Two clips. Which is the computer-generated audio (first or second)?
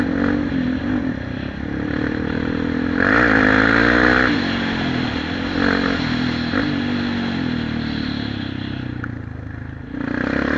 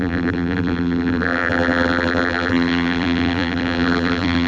second